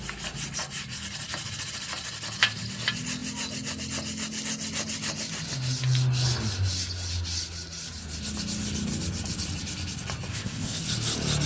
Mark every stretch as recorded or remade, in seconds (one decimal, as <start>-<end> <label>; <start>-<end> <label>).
0.0-10.3 recorded; 10.3-10.8 remade; 10.8-11.5 recorded